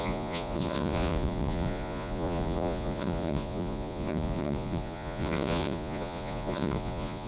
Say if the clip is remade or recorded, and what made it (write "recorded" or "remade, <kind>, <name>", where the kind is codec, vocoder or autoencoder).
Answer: remade, vocoder, Vocos